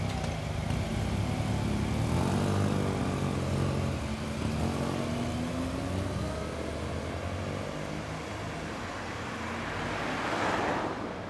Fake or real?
real